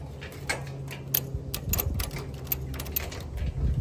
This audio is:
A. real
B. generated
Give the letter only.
A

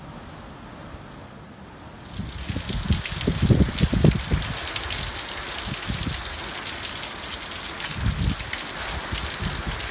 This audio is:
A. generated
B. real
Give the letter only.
B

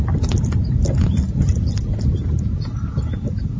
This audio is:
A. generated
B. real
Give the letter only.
B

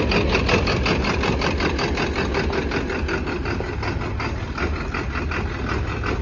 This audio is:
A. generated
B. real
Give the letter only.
B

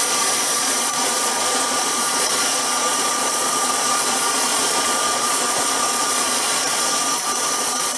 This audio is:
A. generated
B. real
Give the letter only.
A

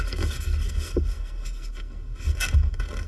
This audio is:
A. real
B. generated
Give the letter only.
B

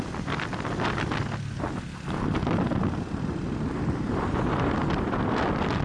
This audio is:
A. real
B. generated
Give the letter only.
A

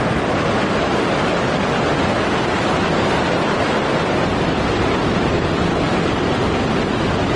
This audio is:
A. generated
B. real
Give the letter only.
B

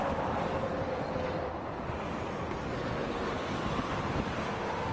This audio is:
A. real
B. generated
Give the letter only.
B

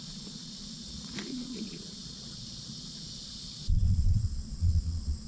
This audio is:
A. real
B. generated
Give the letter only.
B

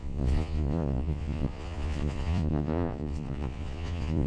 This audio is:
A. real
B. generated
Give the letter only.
B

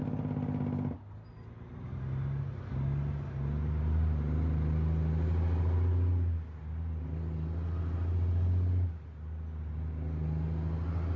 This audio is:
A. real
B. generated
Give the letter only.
A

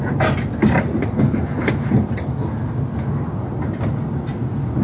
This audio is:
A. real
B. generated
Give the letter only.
A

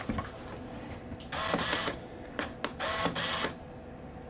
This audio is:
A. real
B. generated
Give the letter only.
A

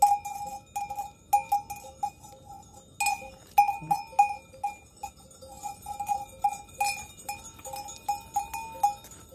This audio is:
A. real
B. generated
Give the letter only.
A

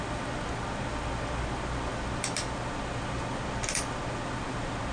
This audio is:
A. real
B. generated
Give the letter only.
A